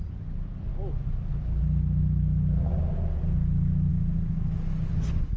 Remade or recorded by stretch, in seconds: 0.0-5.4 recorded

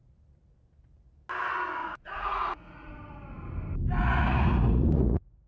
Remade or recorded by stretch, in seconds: 0.0-1.8 recorded; 1.8-2.9 remade; 2.9-4.0 recorded; 4.0-5.5 remade

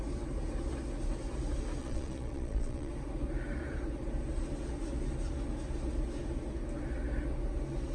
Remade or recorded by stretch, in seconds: 0.0-1.8 recorded; 1.8-2.9 remade; 2.9-7.9 recorded

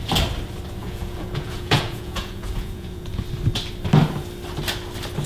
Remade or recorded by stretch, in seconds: 0.0-0.8 recorded; 0.8-3.2 remade; 3.2-5.3 recorded

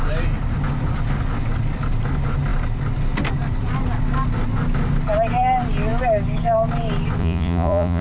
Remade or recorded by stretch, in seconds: 0.0-7.2 recorded; 7.2-8.0 remade

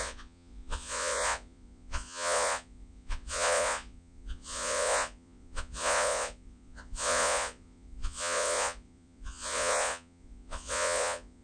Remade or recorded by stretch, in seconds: 0.0-11.4 remade

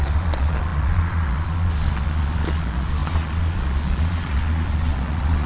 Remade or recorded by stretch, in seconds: 0.0-5.5 remade

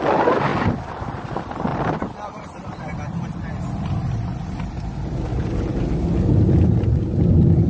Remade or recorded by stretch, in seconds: 0.0-7.7 recorded